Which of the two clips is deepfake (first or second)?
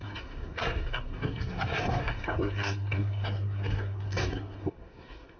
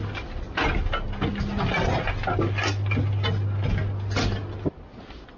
first